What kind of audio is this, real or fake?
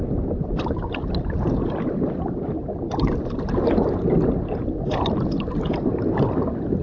real